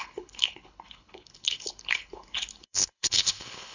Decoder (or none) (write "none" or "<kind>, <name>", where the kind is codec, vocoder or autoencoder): codec, HILCodec